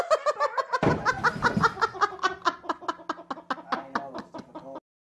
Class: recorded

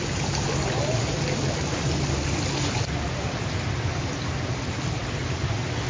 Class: recorded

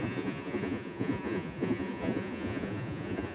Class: remade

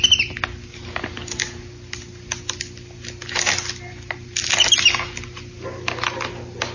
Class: recorded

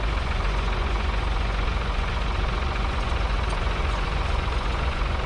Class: remade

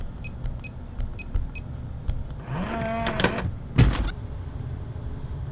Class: recorded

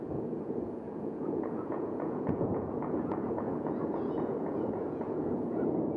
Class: remade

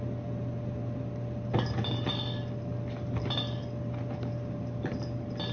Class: recorded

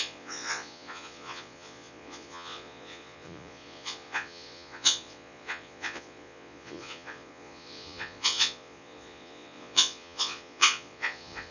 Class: remade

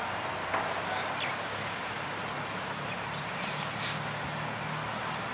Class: recorded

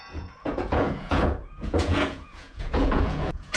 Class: remade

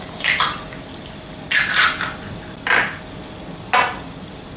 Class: recorded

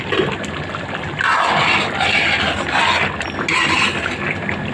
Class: recorded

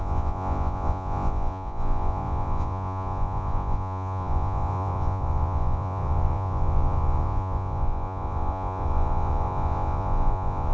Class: remade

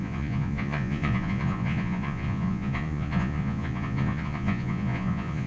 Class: remade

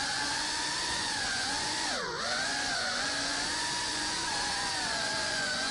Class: remade